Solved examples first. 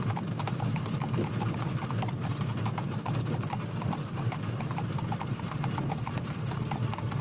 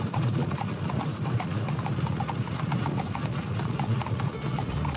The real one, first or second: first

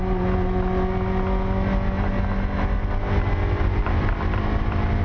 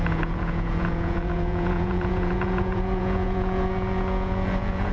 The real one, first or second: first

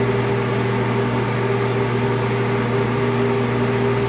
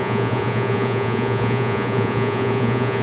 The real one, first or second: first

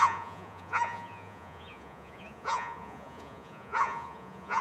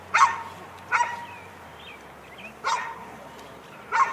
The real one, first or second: second